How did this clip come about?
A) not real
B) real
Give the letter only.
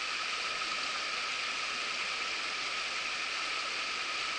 B